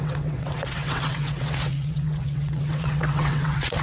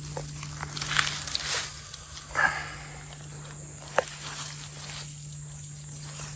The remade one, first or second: first